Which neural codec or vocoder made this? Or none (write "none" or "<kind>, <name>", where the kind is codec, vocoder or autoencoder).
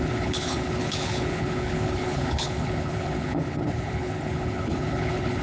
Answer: codec, HILCodec